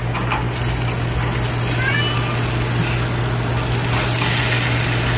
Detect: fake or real real